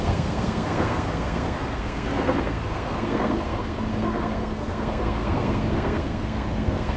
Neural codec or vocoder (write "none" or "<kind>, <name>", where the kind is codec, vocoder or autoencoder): codec, SNAC